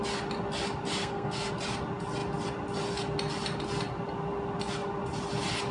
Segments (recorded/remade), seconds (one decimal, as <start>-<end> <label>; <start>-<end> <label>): 0.0-1.0 recorded; 1.0-1.5 remade; 1.5-5.7 recorded